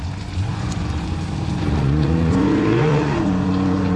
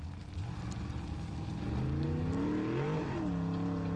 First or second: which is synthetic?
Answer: first